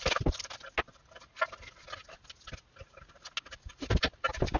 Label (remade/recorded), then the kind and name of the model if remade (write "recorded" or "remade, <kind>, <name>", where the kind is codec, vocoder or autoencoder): recorded